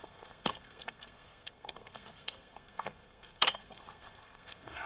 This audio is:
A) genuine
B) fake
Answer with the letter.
B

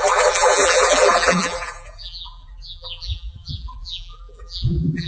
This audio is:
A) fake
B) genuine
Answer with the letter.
A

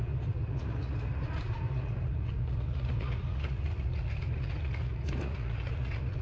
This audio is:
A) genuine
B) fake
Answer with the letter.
B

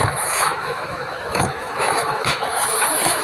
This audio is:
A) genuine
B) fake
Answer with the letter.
B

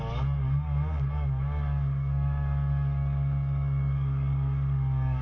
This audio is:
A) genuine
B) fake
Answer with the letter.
B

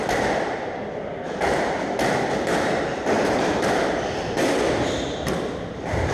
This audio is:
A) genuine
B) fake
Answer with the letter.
A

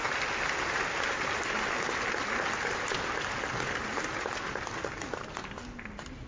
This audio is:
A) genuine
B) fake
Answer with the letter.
A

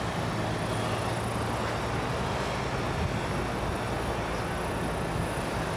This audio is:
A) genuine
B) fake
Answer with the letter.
A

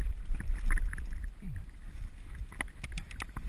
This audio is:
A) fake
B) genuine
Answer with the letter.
A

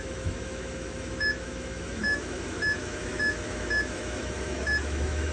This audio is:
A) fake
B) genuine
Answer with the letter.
A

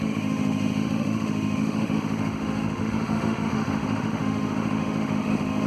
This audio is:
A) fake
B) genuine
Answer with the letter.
A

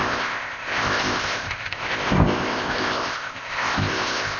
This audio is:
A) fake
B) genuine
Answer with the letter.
A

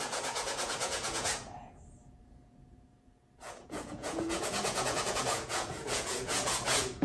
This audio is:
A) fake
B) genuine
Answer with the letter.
A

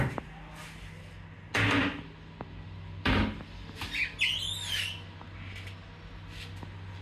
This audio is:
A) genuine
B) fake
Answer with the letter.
A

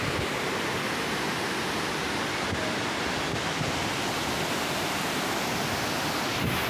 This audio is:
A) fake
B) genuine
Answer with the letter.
B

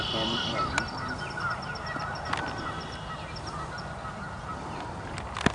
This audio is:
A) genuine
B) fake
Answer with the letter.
A